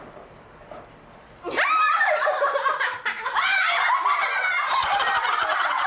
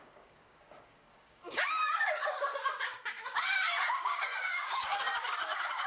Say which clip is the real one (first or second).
first